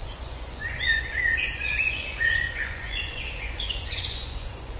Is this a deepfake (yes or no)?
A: yes